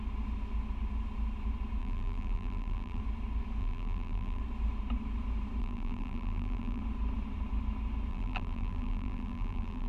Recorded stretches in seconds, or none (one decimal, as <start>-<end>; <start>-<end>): 0.0-1.8; 3.0-3.6; 4.4-5.6; 6.8-8.1